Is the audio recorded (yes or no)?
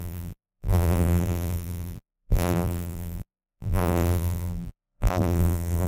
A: no